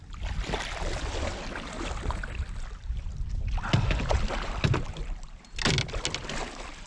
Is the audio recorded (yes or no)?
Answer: yes